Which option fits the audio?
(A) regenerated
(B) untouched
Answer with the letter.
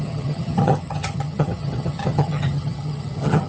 A